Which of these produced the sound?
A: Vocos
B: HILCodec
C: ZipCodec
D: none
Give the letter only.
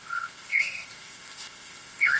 C